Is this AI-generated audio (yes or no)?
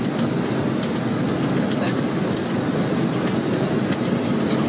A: no